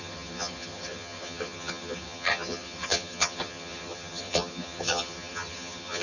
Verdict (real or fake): fake